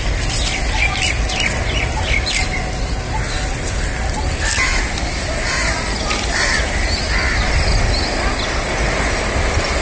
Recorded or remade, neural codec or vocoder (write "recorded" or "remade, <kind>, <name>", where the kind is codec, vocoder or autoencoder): recorded